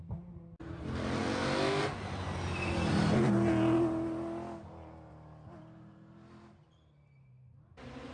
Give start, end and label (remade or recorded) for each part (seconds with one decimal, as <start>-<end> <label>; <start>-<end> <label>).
0.0-8.1 recorded